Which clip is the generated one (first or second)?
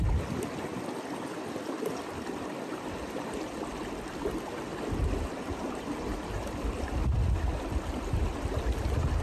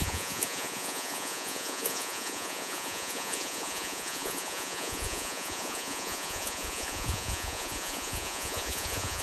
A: second